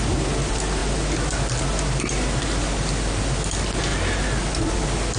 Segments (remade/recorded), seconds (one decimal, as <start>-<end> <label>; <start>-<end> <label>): 0.0-5.2 recorded